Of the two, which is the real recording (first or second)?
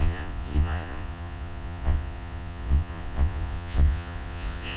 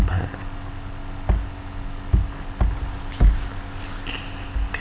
second